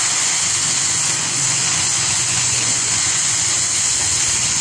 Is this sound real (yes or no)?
no